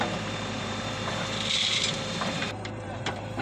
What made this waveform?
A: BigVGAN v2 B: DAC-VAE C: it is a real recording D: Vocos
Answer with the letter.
A